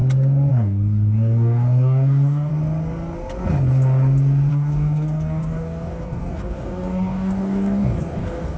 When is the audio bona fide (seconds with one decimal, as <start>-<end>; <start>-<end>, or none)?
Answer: 0.0-0.5; 2.5-4.5